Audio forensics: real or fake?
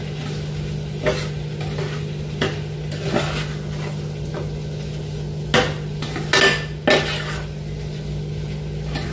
real